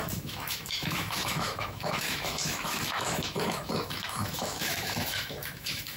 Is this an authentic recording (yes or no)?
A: no